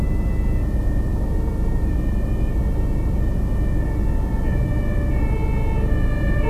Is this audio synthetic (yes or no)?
no